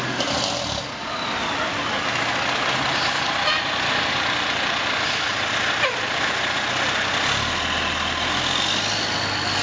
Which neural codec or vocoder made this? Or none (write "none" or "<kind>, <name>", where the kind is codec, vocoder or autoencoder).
none